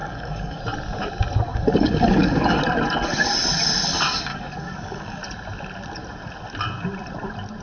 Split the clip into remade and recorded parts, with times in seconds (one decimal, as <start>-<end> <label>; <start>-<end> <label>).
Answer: 0.0-0.6 remade; 0.6-1.5 recorded; 1.5-2.6 remade; 2.6-4.3 recorded; 4.3-5.2 remade; 5.2-7.6 recorded